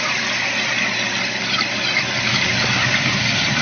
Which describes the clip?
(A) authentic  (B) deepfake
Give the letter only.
B